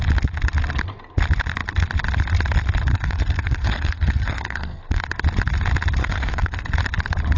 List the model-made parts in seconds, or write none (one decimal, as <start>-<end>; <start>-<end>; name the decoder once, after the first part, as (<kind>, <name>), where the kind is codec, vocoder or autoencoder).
2.9-5.0 (codec, SNAC); 6.0-6.7